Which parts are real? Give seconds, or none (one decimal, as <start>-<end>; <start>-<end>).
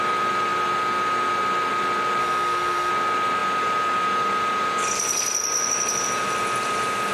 0.0-2.2; 2.9-7.1